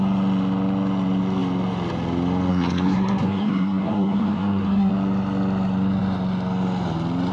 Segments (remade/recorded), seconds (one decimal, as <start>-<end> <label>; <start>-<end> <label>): 0.0-2.5 recorded; 2.5-4.9 remade; 4.9-7.3 recorded